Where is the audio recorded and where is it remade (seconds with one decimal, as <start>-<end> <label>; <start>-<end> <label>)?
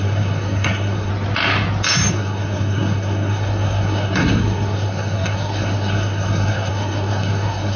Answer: 0.0-1.1 remade; 1.1-2.1 recorded; 2.1-7.8 remade